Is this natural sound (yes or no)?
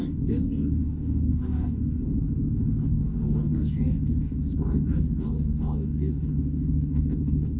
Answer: no